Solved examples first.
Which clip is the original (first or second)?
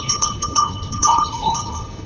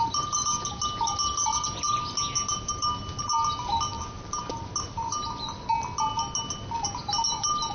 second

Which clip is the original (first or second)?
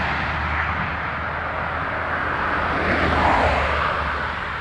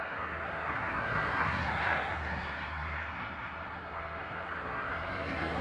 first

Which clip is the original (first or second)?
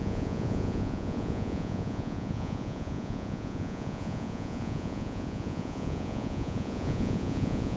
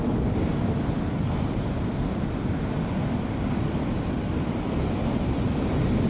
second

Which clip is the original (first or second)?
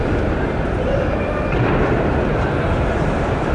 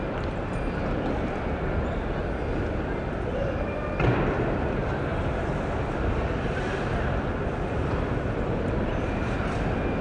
second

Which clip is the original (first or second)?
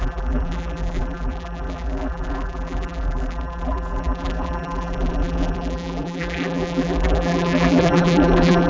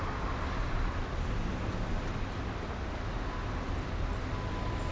second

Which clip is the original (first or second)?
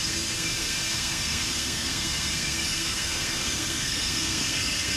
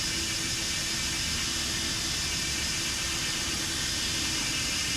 second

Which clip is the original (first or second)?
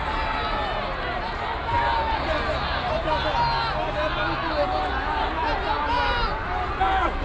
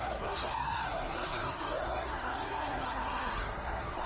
first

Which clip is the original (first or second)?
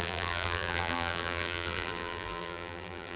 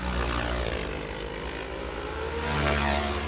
second